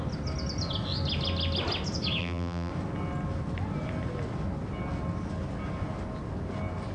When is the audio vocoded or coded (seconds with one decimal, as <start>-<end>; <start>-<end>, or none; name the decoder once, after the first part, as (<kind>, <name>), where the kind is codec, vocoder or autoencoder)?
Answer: 2.2-2.7 (vocoder, BigVGAN v2)